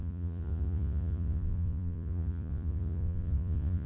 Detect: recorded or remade remade